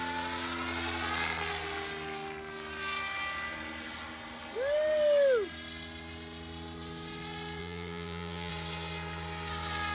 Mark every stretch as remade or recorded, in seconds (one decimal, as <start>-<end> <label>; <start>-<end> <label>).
0.0-7.6 recorded; 7.6-8.5 remade; 8.5-9.9 recorded